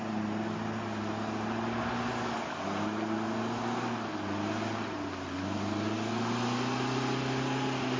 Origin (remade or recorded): recorded